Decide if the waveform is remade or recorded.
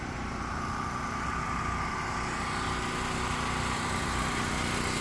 recorded